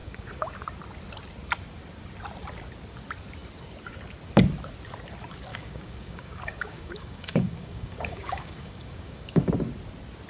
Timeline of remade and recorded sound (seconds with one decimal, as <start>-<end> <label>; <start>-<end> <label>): 0.0-0.5 remade; 0.5-5.5 recorded; 5.5-9.5 remade; 9.5-10.3 recorded